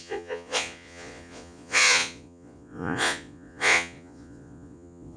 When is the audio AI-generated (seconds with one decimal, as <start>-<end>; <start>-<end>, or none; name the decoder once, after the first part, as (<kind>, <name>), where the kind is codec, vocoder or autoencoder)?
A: 0.0-5.2 (vocoder, Vocos)

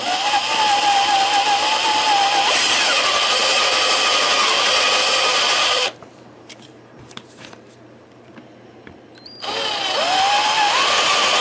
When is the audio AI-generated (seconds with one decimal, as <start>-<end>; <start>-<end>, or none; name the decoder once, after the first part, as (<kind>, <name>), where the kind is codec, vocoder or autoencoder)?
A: 5.3-8.4 (vocoder, BigVGAN v2)

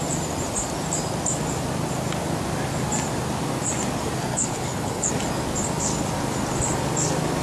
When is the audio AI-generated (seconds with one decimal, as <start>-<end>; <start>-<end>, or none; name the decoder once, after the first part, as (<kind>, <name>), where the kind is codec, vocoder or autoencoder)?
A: 4.3-5.1 (codec, HILCodec)

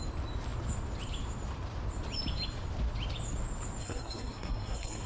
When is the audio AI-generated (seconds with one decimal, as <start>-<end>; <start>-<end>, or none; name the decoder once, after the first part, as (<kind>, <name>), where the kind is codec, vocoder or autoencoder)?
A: 3.8-5.1 (codec, SNAC)

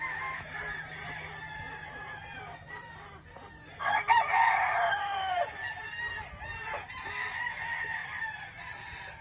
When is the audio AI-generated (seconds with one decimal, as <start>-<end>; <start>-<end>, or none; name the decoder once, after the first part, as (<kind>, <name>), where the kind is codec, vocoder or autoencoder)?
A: 8.0-9.2 (vocoder, BigVGAN v2)

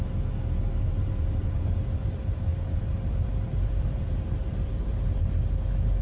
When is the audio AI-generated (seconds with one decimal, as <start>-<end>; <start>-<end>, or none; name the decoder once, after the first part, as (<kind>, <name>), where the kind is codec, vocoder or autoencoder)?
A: 2.5-5.2 (vocoder, BigVGAN v2)